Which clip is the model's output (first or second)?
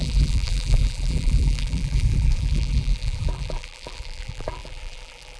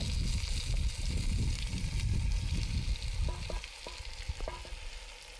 first